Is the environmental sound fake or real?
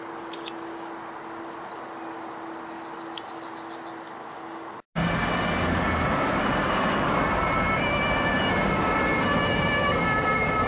real